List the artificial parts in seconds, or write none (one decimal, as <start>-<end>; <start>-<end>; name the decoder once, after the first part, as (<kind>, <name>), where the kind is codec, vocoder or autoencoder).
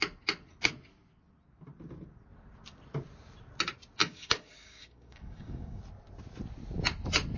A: 4.0-5.8 (codec, DAC)